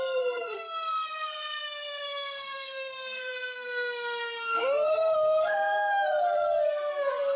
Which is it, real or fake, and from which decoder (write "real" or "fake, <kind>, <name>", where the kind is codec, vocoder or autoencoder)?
fake, codec, SNAC